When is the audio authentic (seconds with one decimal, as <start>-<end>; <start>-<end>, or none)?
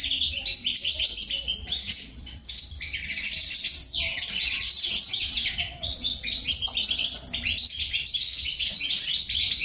0.0-1.6; 2.6-4.1; 6.5-8.2; 8.8-9.6